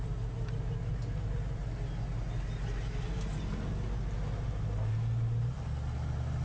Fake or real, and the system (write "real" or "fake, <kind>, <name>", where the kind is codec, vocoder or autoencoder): real